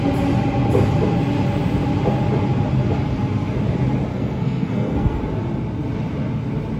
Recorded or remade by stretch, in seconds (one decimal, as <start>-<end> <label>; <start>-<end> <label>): 0.0-4.1 recorded; 4.1-5.2 remade; 5.2-6.8 recorded